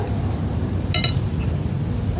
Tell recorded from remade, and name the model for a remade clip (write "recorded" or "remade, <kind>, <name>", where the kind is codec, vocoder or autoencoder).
recorded